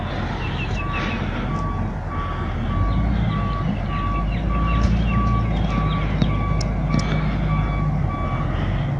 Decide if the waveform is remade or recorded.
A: recorded